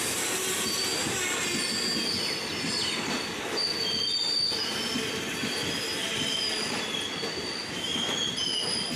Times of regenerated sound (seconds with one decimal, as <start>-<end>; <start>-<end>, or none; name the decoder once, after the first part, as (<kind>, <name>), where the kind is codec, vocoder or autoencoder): 7.6-8.1 (autoencoder, DAC-VAE)

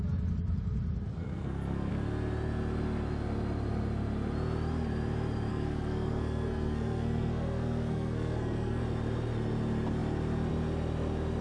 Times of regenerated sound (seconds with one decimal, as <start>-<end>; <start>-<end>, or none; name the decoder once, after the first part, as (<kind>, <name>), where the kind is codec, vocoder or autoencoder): 1.1-1.9 (codec, SNAC); 5.5-8.8

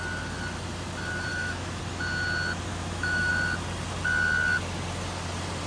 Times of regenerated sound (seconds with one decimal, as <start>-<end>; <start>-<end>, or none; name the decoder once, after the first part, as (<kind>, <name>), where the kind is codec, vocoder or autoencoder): 1.3-1.8 (autoencoder, DAC-VAE); 2.7-3.3

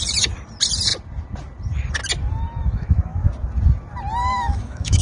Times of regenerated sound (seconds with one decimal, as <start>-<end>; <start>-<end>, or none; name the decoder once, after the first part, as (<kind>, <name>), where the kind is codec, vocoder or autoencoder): 2.6-3.3 (autoencoder, DAC-VAE); 4.2-5.0

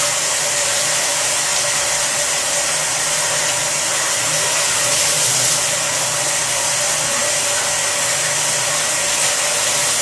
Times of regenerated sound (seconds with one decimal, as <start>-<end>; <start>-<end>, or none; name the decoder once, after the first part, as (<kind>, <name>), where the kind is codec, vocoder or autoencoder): none

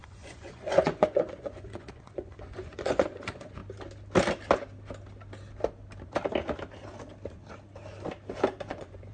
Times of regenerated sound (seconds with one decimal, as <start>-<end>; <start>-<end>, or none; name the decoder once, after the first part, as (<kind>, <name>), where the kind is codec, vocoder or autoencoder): 0.0-3.6 (vocoder, Vocos); 8.7-9.1

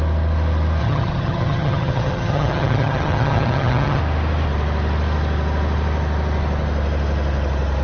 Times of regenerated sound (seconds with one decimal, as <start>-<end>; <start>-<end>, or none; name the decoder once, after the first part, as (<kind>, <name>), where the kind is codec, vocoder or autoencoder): 0.8-4.0 (vocoder, HiFi-GAN)